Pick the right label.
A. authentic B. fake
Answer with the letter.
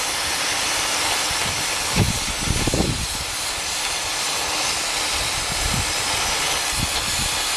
A